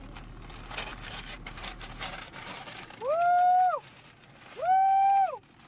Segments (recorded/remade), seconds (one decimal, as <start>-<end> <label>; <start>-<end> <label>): 0.0-0.9 recorded; 0.9-2.8 remade; 2.8-5.7 recorded